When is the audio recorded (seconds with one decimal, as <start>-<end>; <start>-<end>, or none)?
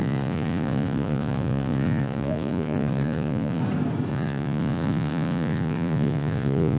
3.6-4.1